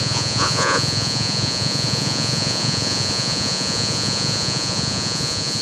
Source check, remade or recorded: remade